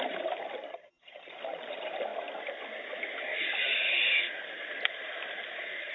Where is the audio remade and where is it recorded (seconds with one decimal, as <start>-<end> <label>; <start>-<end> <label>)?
0.0-0.7 recorded; 0.7-1.3 remade; 1.3-5.9 recorded